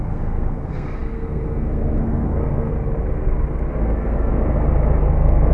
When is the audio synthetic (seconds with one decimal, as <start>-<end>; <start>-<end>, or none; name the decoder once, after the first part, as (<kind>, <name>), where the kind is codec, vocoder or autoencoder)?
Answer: 0.0-2.7 (codec, SNAC); 3.7-4.4; 5.0-5.5